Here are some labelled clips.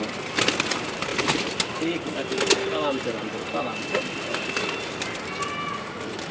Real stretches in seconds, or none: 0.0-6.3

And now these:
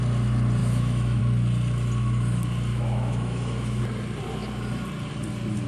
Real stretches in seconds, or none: 0.0-0.6; 1.2-2.7; 3.8-5.7

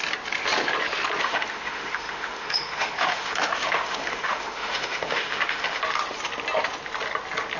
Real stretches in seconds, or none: 0.0-1.2; 5.8-7.6

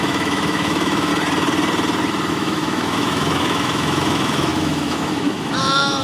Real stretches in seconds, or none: 1.1-2.3

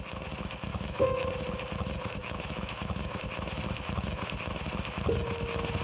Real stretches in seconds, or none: 0.0-0.7; 1.3-2.2; 3.2-5.8